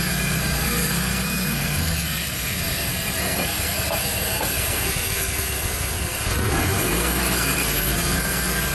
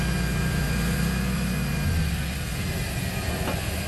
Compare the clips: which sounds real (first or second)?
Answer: second